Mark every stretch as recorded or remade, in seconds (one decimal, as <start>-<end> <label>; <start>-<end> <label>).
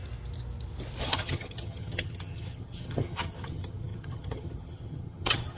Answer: 0.0-1.0 recorded; 1.0-5.6 remade